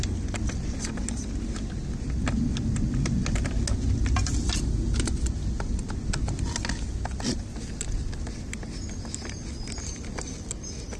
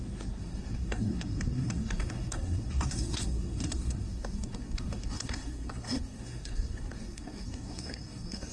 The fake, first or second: second